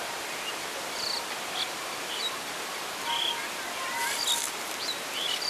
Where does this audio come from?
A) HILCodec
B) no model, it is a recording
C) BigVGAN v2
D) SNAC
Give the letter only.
C